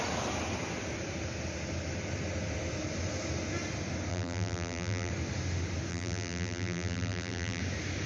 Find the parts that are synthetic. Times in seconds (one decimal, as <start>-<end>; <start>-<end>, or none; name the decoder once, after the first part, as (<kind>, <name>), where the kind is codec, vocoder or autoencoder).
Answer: 4.1-5.1 (vocoder, BigVGAN v2); 5.9-7.6